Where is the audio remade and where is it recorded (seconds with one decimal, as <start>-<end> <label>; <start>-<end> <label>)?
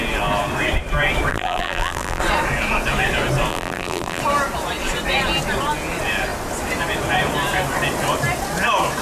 0.0-1.3 recorded; 1.3-2.2 remade; 2.2-3.5 recorded; 3.5-4.2 remade; 4.2-9.0 recorded